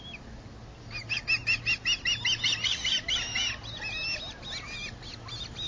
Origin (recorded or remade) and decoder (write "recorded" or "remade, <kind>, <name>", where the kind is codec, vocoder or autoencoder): recorded